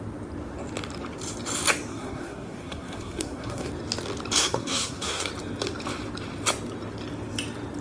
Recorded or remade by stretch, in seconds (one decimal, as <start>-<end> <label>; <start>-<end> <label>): 0.0-1.9 recorded; 1.9-3.7 remade; 3.7-4.4 recorded; 4.4-5.3 remade; 5.3-7.8 recorded

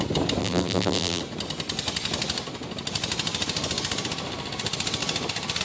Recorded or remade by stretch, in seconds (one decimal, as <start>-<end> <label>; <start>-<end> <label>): 0.0-0.4 recorded; 0.4-1.2 remade; 1.2-5.6 recorded